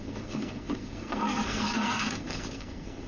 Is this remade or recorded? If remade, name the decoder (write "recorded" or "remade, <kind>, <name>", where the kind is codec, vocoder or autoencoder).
remade, codec, SNAC